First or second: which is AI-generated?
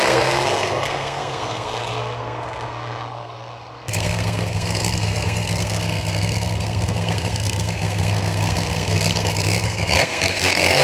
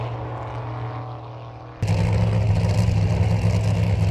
first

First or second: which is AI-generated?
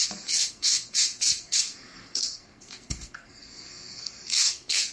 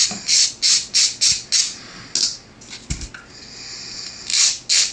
first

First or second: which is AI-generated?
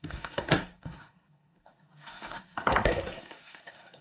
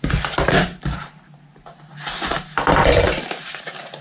first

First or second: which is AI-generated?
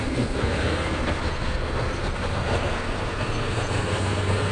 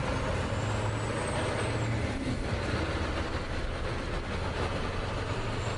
first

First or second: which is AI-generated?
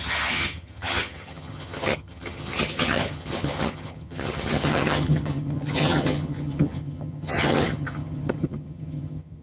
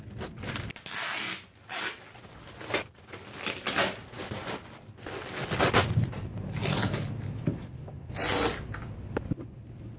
first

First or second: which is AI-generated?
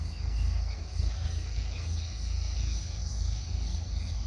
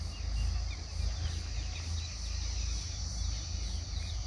first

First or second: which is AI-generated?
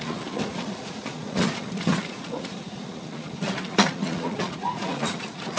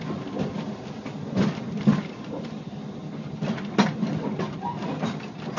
first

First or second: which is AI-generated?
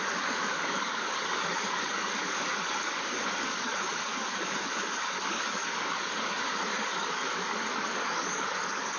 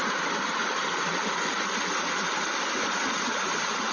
first